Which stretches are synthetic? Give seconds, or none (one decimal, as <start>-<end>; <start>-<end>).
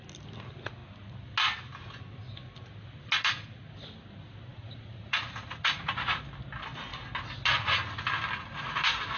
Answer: 4.5-6.2